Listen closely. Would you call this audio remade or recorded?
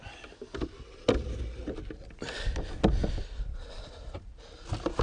recorded